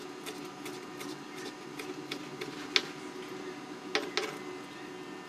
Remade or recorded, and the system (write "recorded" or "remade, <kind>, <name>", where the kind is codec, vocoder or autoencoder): recorded